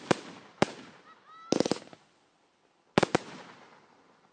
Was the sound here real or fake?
real